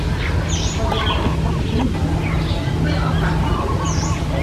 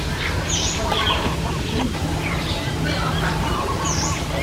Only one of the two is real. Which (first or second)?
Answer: first